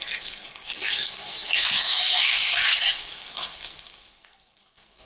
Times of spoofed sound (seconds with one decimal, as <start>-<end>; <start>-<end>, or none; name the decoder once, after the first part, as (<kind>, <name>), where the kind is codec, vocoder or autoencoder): 0.0-5.1 (codec, SNAC)